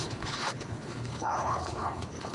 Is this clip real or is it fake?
fake